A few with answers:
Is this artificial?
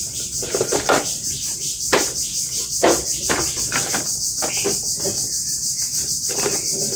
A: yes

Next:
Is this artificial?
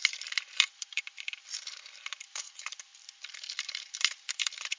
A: yes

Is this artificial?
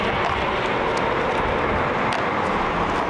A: no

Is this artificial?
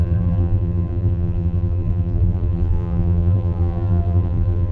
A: yes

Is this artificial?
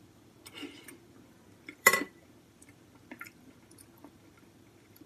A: yes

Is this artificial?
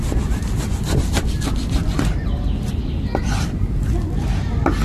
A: no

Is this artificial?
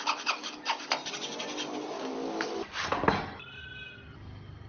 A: no